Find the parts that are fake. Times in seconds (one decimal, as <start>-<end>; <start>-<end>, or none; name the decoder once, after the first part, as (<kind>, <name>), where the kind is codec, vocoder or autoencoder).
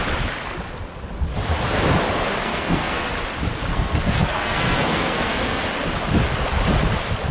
2.4-3.1 (codec, SNAC); 3.7-5.6